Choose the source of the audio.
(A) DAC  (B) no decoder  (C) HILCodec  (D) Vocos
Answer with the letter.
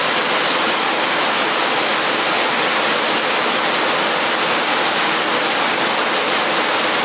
B